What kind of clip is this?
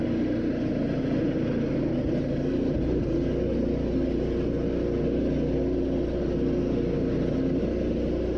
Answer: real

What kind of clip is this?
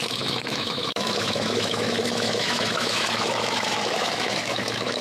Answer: fake